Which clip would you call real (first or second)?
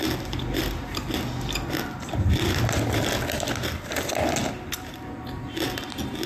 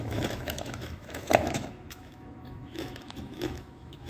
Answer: first